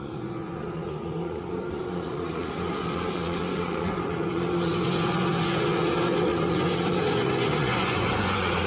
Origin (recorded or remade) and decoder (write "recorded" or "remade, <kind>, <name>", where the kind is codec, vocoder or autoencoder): remade, vocoder, Vocos